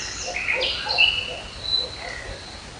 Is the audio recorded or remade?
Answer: recorded